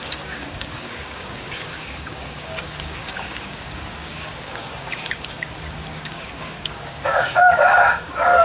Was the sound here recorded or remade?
remade